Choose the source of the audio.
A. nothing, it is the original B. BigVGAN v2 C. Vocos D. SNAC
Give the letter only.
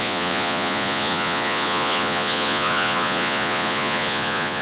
C